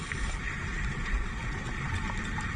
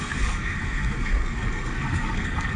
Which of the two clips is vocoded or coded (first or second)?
second